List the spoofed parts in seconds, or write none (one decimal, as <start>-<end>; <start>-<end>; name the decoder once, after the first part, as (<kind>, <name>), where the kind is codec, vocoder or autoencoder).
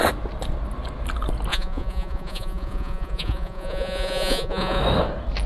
1.5-4.8 (vocoder, Vocos)